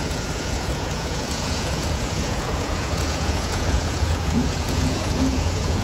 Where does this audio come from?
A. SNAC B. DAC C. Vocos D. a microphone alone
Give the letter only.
C